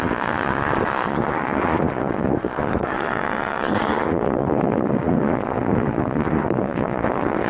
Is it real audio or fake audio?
fake